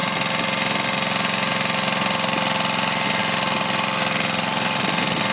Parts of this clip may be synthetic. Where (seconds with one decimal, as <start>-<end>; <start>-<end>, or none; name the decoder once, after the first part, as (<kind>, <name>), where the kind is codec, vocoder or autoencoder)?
none